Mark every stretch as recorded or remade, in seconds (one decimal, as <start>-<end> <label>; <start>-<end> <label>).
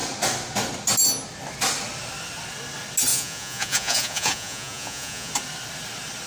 0.0-3.1 recorded; 3.1-5.3 remade; 5.3-6.3 recorded